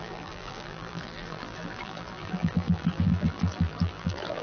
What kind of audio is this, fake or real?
fake